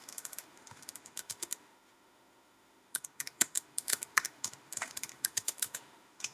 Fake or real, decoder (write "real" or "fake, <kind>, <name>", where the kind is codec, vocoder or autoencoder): fake, autoencoder, DAC-VAE